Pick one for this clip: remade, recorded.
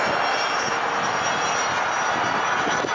recorded